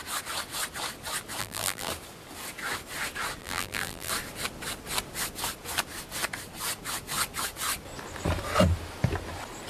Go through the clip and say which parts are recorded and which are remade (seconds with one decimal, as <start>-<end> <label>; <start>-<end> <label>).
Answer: 0.0-1.4 recorded; 1.4-1.9 remade; 1.9-3.4 recorded; 3.4-4.1 remade; 4.1-9.7 recorded